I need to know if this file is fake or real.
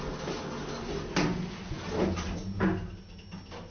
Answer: real